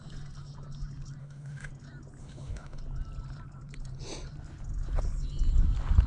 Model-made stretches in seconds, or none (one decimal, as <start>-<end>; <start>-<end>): 1.2-1.7; 2.2-2.8